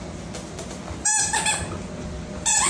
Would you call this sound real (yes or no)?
yes